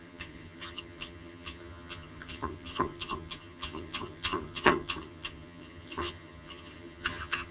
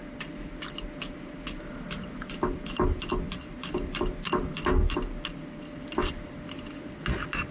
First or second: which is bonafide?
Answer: second